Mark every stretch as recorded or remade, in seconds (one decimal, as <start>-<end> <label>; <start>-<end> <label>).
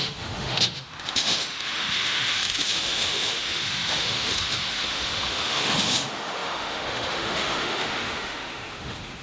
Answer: 0.0-9.2 remade